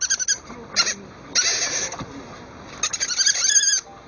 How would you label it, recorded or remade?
recorded